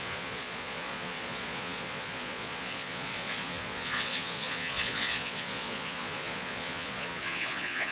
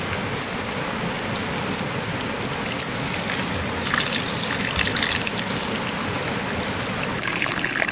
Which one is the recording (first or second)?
second